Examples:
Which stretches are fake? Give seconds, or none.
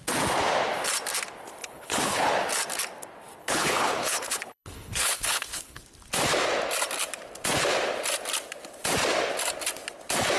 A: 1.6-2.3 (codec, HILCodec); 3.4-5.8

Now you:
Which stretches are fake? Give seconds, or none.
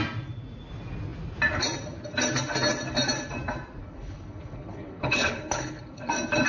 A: 3.8-6.1 (codec, HILCodec)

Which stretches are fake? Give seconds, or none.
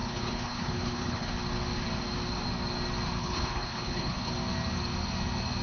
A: 0.0-1.3 (codec, HILCodec); 3.2-4.3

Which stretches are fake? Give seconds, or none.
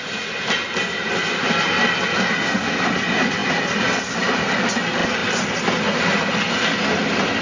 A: none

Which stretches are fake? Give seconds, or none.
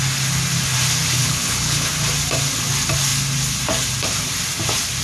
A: 1.2-1.9 (codec, HILCodec)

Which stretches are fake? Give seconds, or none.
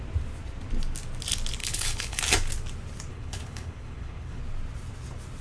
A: 1.6-2.2 (codec, HILCodec); 3.1-4.4